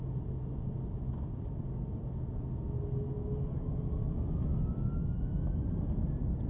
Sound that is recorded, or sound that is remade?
recorded